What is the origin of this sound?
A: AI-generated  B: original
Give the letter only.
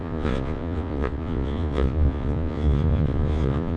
A